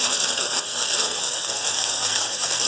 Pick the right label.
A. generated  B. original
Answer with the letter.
A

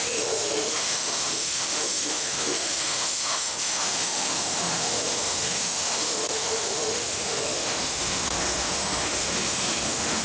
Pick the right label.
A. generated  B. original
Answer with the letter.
A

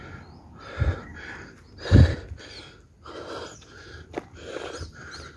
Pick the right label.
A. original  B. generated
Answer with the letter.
A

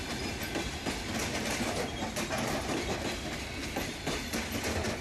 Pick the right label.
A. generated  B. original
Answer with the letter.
B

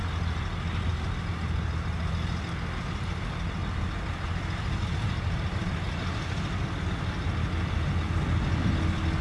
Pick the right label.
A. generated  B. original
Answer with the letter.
B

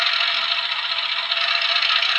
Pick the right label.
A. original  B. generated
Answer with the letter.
A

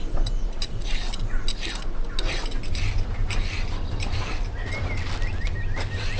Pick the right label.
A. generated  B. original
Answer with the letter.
B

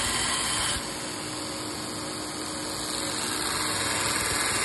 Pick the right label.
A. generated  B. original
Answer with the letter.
B